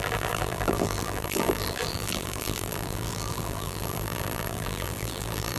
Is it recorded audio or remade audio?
remade